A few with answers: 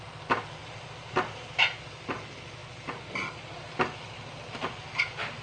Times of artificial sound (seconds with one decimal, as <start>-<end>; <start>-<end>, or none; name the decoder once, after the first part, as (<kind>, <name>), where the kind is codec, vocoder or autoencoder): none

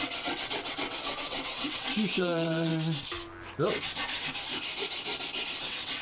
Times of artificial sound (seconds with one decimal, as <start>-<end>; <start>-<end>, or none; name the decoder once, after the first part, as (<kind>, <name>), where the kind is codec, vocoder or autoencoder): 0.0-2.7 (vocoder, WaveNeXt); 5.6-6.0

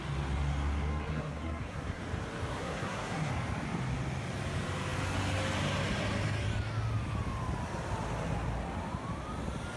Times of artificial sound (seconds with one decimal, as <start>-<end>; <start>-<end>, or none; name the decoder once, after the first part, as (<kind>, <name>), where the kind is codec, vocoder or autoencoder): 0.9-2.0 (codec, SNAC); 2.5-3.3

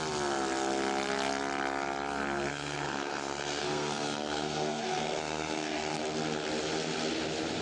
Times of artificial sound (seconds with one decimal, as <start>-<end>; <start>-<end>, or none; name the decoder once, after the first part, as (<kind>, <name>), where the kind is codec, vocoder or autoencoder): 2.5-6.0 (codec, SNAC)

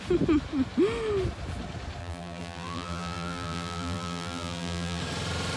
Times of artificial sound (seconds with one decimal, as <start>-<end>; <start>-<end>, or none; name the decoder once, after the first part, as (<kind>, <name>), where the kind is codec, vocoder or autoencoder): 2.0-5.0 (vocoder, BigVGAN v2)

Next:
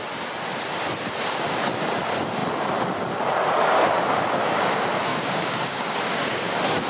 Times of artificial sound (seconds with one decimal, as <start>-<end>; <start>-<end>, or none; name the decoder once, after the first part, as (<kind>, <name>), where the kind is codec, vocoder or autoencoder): 5.1-6.5 (codec, DAC)

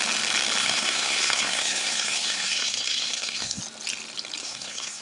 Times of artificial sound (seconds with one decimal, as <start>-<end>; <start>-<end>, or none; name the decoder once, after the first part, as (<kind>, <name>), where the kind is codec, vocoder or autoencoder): 0.6-3.6 (codec, SNAC); 4.4-5.0